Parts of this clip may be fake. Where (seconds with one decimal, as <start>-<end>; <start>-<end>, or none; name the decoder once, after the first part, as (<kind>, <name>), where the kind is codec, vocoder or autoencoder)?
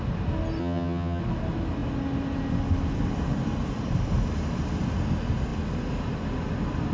0.6-1.2 (vocoder, HiFi-GAN)